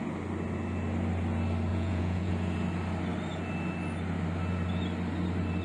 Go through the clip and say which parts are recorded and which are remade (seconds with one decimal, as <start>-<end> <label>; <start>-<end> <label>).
0.0-1.7 recorded; 1.7-2.3 remade; 2.3-5.6 recorded